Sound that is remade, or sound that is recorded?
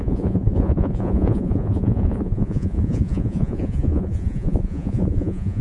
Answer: remade